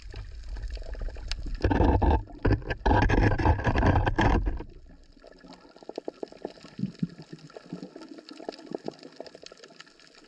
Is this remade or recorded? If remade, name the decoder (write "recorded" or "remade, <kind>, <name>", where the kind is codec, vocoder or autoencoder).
recorded